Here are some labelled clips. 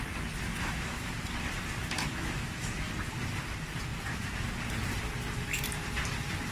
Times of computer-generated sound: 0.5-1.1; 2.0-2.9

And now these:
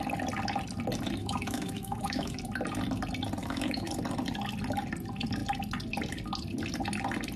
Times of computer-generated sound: 1.2-2.4; 3.4-3.9